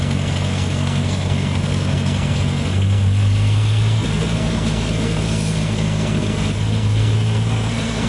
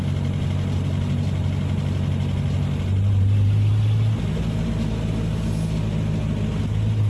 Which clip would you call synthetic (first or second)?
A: first